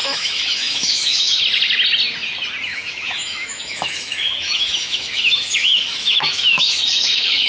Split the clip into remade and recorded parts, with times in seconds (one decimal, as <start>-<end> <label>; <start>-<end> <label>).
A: 0.0-1.4 remade; 1.4-2.7 recorded; 2.7-7.5 remade